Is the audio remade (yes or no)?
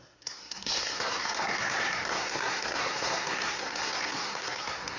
yes